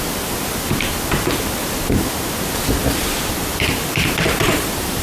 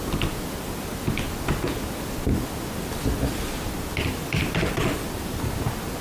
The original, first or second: second